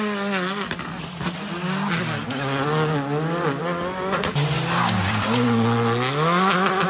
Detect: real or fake real